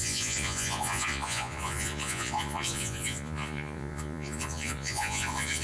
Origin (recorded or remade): remade